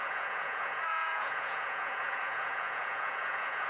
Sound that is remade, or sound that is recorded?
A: remade